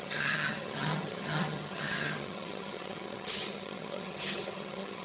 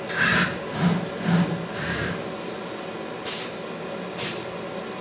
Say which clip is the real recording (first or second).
second